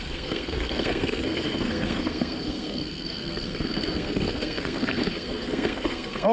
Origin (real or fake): fake